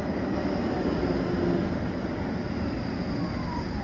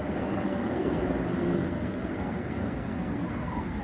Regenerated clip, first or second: second